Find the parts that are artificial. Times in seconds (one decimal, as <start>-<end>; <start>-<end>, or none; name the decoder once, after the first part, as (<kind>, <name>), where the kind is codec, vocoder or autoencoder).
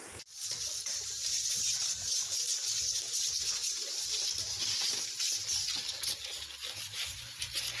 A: none